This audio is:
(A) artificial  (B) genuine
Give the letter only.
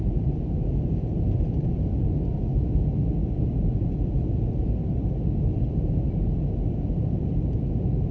B